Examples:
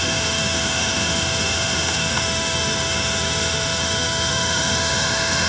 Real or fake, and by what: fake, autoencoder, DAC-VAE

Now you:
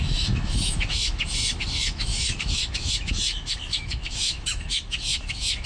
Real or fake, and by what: fake, autoencoder, DAC-VAE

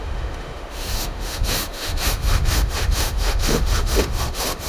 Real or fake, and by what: fake, autoencoder, DAC-VAE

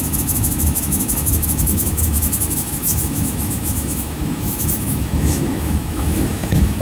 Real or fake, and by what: fake, autoencoder, DAC-VAE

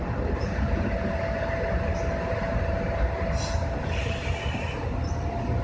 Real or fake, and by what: real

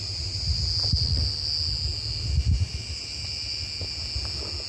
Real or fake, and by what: real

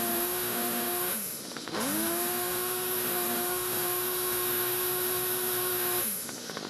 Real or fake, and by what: fake, autoencoder, DAC-VAE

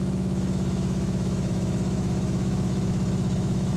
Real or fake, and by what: fake, autoencoder, DAC-VAE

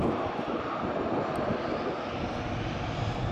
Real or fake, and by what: real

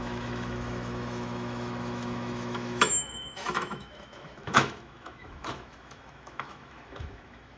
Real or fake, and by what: fake, autoencoder, DAC-VAE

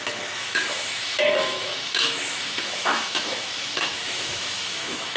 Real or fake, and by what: fake, autoencoder, DAC-VAE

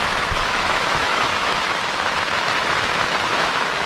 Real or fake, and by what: fake, autoencoder, DAC-VAE